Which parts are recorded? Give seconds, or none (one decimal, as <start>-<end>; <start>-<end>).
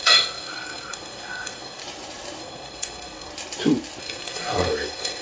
1.8-2.4; 3.3-4.0